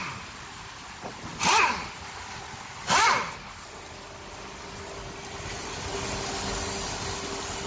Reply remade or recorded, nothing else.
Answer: recorded